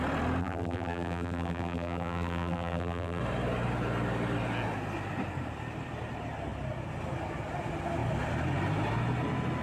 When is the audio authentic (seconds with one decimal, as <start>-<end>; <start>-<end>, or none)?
0.0-0.4; 3.2-9.6